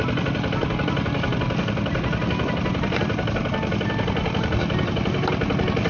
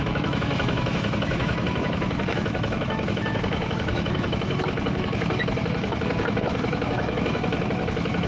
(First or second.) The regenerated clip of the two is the second